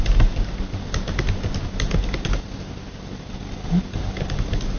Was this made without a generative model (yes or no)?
yes